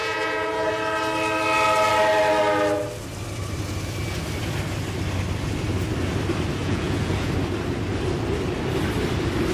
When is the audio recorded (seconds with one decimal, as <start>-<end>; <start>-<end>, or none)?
0.7-6.6; 7.3-9.5